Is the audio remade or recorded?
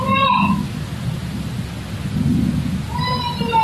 recorded